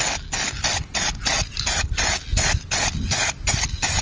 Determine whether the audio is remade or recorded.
recorded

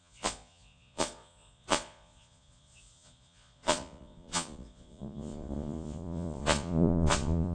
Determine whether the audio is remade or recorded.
remade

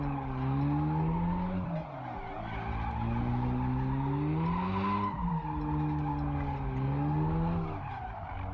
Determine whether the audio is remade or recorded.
recorded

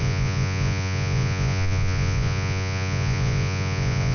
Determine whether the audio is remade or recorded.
remade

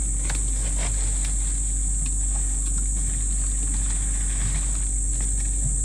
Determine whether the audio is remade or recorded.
recorded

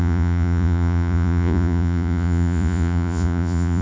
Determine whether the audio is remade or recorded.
remade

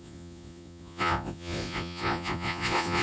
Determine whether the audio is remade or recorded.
remade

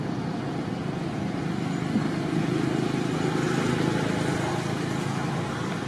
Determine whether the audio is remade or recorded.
recorded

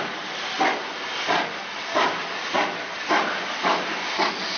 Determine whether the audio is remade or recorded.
recorded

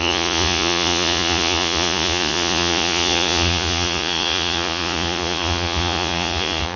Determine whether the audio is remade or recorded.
remade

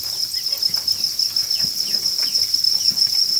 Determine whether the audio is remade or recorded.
recorded